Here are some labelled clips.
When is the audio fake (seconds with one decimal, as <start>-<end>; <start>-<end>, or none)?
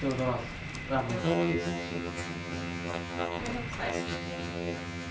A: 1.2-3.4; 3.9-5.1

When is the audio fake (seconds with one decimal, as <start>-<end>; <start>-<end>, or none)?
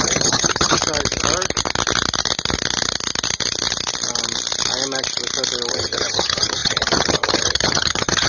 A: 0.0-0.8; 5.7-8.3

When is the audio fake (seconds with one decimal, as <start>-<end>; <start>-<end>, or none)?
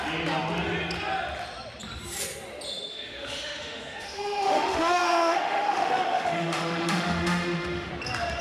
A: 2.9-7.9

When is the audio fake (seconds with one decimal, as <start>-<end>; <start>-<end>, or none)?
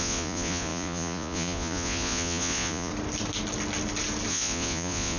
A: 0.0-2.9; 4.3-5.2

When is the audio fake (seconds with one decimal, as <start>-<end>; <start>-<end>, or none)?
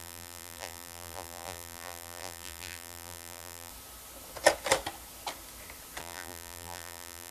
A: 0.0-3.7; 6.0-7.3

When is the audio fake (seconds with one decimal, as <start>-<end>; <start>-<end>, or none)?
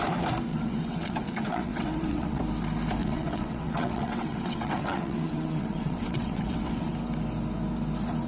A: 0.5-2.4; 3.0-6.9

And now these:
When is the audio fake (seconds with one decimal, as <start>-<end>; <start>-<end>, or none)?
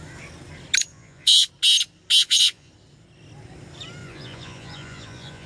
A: 0.9-1.5; 2.2-2.7; 4.0-5.5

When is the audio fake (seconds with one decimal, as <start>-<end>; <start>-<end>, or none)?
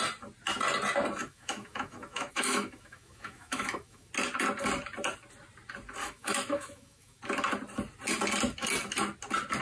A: 1.2-4.1; 6.0-7.2